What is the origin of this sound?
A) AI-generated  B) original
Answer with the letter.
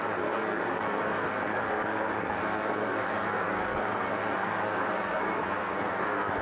A